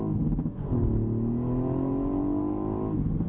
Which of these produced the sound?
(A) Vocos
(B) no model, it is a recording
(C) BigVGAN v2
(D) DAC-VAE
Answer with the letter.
B